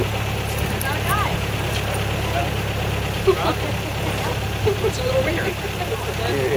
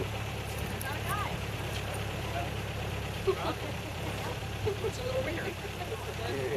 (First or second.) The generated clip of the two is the second